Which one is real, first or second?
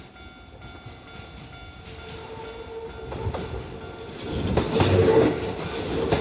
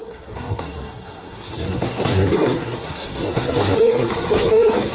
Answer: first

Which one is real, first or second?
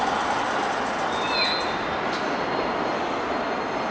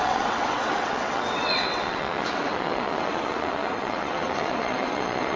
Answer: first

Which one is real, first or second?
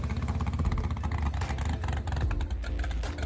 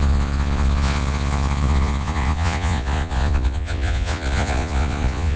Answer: first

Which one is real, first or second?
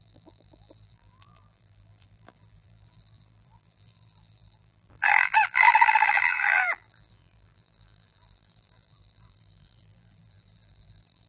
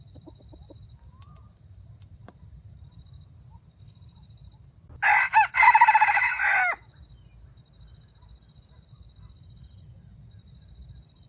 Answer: second